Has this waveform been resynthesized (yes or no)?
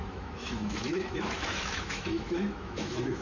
yes